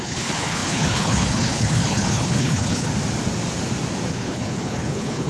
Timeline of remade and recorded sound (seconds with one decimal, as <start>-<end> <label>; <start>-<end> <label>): 0.0-2.9 remade; 2.9-4.1 recorded; 4.1-5.3 remade